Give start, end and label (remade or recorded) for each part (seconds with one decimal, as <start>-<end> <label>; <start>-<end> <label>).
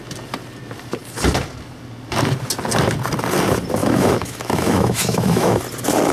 0.0-3.8 recorded; 3.8-5.6 remade; 5.6-6.1 recorded